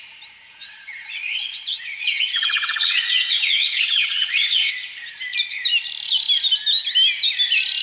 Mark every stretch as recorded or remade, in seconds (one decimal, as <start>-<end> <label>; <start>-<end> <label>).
0.0-0.6 recorded; 0.6-4.7 remade; 4.7-7.8 recorded